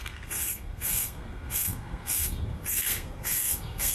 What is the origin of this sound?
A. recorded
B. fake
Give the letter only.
B